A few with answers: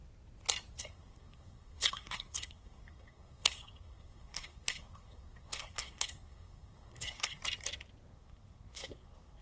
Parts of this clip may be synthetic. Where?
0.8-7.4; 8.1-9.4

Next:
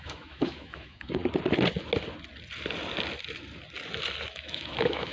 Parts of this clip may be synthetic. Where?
0.0-1.2; 4.3-5.1